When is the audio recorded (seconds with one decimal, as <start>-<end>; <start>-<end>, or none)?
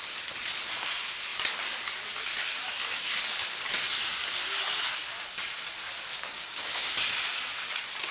0.0-6.1; 6.9-8.1